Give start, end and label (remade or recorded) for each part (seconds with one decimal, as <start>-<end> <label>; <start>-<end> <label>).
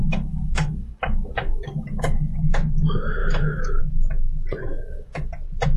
0.0-2.4 remade; 2.4-3.2 recorded; 3.2-3.8 remade; 3.8-4.7 recorded; 4.7-5.3 remade; 5.3-5.8 recorded